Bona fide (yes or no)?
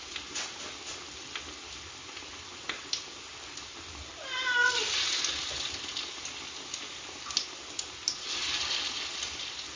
yes